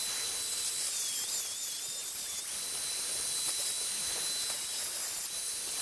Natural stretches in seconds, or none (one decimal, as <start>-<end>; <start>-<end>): 0.0-5.8